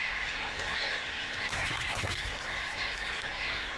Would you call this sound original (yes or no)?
no